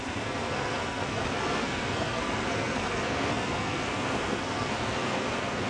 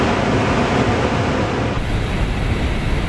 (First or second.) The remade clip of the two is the first